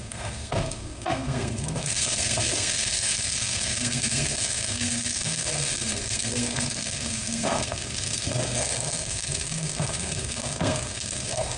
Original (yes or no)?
no